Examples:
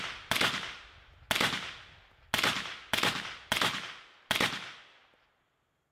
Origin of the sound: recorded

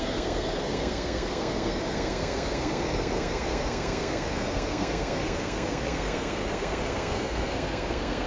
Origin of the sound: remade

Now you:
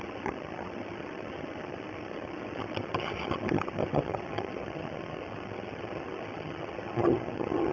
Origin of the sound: remade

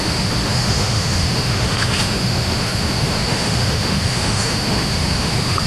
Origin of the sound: remade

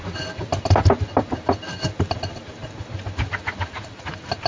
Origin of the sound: recorded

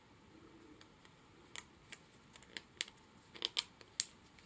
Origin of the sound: recorded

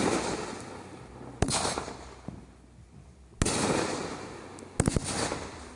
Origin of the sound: recorded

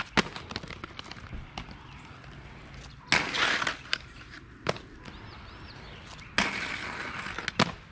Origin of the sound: recorded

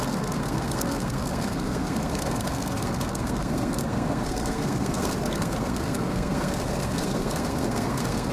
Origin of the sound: remade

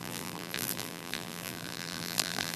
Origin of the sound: remade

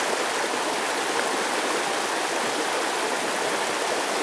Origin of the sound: recorded